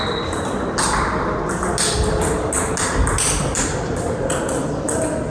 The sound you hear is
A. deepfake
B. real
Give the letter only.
B